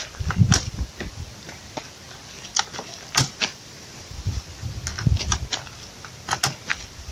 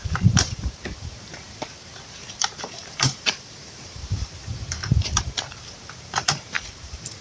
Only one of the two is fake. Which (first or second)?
second